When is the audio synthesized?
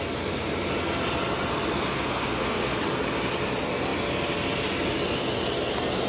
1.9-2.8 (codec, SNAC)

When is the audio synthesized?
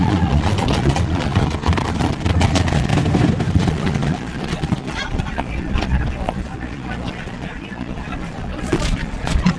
0.0-2.9 (vocoder, Vocos); 3.5-9.6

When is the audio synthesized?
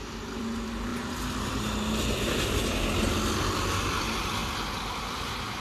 0.0-0.9 (vocoder, BigVGAN v2); 3.7-4.4; 4.9-5.6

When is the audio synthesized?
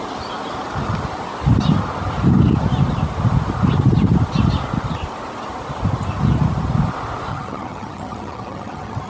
7.3-9.1 (vocoder, HiFi-GAN)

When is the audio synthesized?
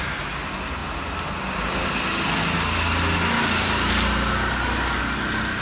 none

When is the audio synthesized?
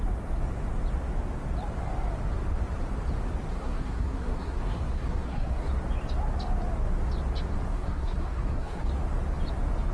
3.5-5.7 (codec, SNAC); 7.7-8.9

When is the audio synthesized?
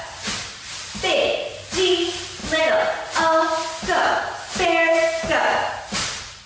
none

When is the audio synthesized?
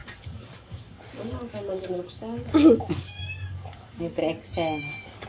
0.0-4.2 (codec, DAC); 4.8-5.3